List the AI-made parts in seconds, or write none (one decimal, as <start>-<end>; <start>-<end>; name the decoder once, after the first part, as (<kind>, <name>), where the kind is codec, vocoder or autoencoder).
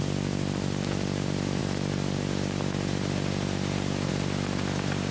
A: none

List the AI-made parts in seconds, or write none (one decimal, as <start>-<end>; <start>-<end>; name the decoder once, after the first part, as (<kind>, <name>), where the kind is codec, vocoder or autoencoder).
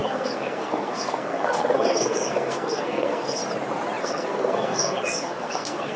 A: 0.0-3.4 (codec, SNAC); 4.0-6.0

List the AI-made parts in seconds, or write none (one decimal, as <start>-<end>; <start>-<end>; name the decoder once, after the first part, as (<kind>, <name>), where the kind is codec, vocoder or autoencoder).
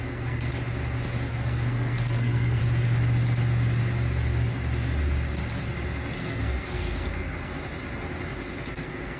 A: 0.0-0.5 (codec, SNAC); 1.3-2.6; 6.2-7.5; 8.7-9.2